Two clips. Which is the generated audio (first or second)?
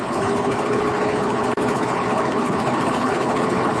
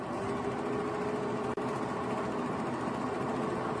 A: first